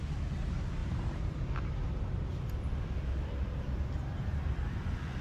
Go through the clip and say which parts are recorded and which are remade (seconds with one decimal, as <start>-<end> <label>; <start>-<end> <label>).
0.0-5.2 recorded